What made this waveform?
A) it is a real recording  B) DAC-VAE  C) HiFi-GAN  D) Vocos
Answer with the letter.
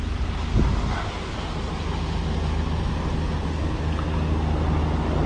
A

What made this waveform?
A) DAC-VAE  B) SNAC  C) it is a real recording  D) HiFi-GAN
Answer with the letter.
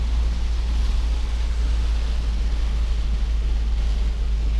C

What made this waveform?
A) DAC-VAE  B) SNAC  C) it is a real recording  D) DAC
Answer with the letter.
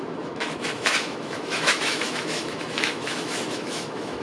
A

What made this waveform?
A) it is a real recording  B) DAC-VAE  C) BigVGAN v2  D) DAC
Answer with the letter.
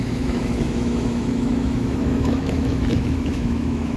B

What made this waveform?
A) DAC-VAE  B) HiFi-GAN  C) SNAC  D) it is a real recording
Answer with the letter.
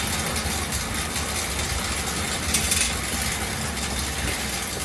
D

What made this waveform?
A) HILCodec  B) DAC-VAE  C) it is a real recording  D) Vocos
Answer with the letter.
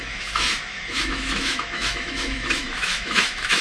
B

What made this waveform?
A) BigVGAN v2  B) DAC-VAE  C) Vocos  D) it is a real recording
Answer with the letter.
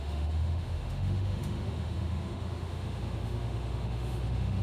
B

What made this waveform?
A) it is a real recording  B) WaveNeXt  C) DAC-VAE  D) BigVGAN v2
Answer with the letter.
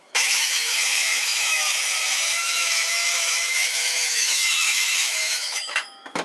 C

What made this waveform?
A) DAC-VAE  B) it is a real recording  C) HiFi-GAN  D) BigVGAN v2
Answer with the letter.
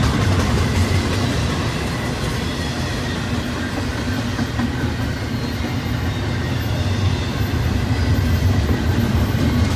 B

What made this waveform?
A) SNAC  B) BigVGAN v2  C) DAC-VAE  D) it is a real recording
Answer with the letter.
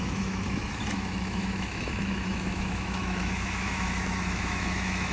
C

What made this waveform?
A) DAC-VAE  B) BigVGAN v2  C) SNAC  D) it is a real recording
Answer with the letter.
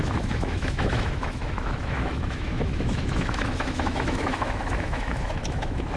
A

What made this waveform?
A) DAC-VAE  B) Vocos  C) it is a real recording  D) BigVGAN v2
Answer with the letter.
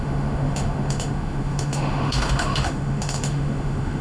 A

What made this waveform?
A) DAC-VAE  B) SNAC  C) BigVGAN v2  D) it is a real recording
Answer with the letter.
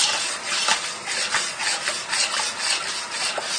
D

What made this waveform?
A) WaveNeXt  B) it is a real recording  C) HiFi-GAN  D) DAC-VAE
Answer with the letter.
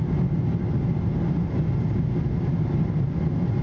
B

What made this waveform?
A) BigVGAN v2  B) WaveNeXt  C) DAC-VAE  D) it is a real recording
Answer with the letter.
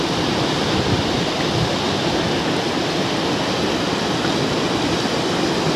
D